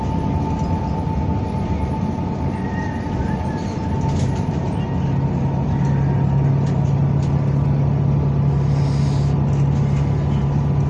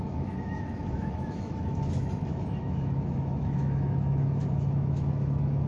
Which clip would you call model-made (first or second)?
second